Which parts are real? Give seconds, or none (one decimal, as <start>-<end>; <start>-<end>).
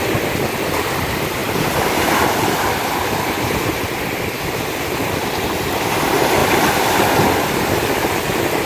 0.0-1.4; 3.8-6.4